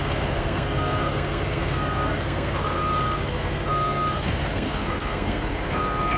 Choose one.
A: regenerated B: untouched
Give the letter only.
A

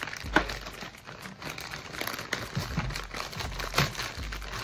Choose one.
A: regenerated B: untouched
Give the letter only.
B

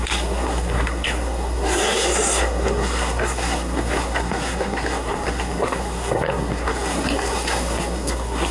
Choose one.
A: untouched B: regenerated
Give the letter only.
B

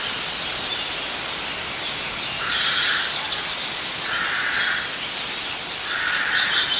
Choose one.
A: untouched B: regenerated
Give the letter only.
A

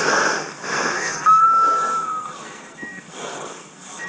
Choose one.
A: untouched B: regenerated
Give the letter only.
B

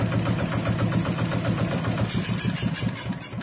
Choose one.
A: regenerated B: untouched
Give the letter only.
B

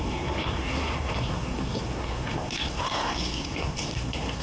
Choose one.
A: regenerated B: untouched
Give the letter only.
A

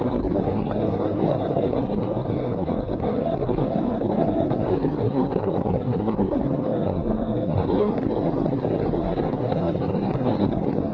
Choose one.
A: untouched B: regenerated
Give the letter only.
B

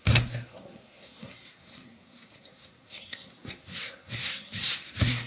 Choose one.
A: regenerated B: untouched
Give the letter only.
A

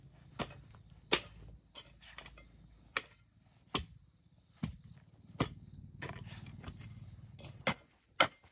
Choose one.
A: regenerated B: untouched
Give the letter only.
B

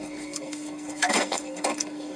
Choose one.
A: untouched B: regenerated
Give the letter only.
B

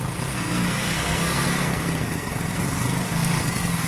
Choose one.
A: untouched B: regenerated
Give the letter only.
B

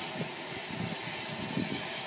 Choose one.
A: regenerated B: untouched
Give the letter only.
B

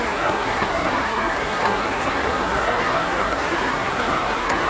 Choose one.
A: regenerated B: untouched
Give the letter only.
A